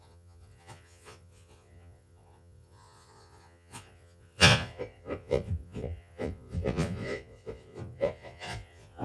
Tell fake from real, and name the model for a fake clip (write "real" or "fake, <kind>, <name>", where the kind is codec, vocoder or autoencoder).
fake, vocoder, Vocos